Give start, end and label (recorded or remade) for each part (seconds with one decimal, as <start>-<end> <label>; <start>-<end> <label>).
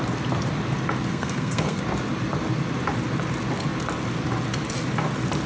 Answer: 0.0-1.1 recorded; 1.1-1.8 remade; 1.8-5.5 recorded